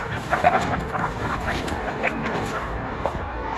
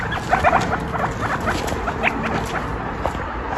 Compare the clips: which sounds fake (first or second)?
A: first